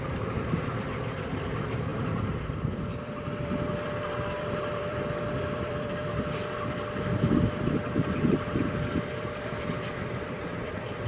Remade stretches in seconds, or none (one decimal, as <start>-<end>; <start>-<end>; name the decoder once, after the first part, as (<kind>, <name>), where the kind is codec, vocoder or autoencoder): 0.0-11.1 (vocoder, BigVGAN v2)